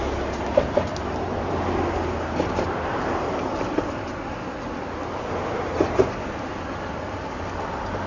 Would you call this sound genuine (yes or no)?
yes